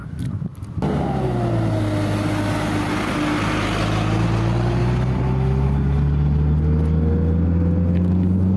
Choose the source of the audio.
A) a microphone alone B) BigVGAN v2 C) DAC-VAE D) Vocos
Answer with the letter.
A